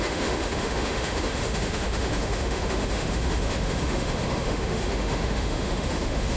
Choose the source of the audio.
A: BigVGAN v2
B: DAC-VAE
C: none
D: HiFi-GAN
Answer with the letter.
B